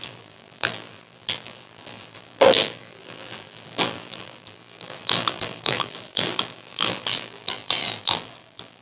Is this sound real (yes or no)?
no